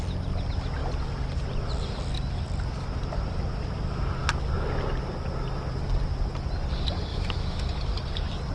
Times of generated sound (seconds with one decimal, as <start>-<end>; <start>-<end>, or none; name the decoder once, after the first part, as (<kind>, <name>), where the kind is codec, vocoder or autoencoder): 7.1-7.7 (autoencoder, DAC-VAE)